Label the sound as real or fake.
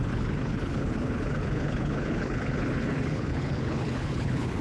fake